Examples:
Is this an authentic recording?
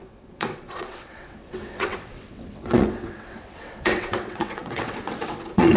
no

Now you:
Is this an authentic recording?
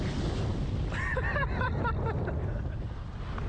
yes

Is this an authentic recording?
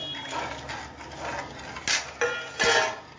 yes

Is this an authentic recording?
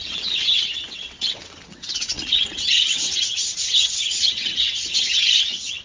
no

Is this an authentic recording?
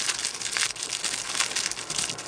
yes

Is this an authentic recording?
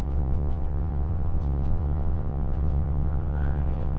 no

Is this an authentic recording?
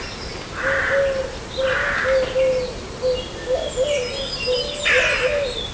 yes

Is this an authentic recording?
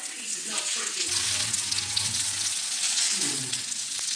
no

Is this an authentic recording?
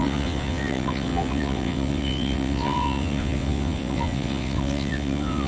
no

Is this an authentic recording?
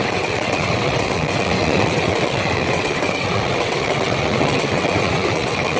no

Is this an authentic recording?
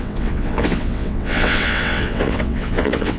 no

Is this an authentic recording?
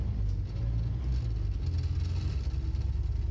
yes